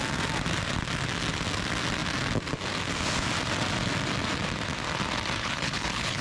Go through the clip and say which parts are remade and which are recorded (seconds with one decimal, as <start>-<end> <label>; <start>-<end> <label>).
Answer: 0.0-5.4 recorded; 5.4-6.2 remade